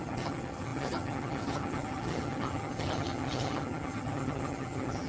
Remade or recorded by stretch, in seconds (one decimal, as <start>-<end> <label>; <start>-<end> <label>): 0.0-5.1 remade